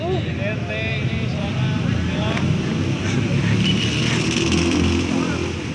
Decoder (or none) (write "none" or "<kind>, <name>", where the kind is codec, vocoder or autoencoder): none